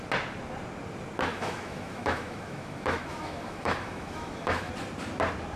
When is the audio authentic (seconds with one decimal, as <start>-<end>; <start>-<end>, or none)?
0.0-1.3; 4.7-5.6